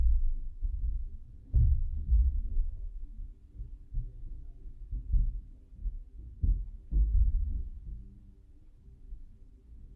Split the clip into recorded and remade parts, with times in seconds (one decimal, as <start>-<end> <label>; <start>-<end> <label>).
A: 0.0-5.8 recorded; 5.8-6.6 remade; 6.6-10.0 recorded